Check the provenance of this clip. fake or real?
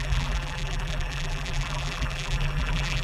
fake